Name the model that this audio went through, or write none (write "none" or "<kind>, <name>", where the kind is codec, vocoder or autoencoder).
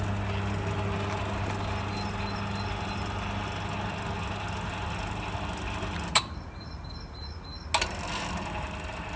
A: none